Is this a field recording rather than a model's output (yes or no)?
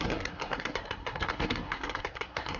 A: no